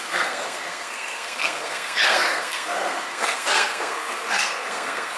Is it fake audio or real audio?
fake